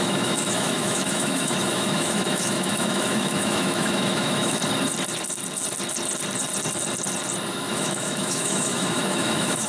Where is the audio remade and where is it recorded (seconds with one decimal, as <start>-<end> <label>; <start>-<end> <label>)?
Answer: 0.0-4.6 remade; 4.6-7.5 recorded; 7.5-9.7 remade